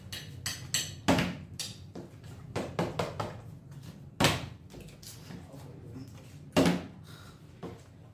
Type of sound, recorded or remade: recorded